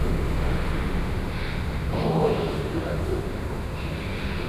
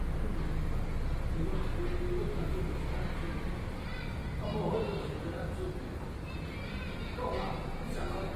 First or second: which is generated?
first